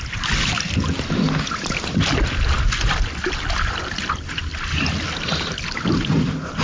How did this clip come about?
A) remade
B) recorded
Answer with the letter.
B